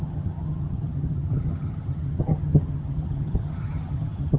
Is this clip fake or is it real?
fake